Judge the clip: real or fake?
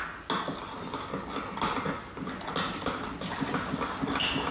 real